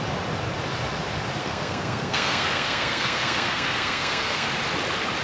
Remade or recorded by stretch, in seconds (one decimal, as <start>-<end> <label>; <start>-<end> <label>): 0.0-1.4 recorded; 1.4-4.5 remade; 4.5-5.2 recorded